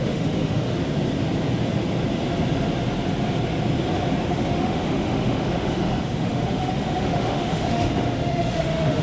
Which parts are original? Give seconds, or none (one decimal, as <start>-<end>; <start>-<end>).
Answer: 0.8-4.3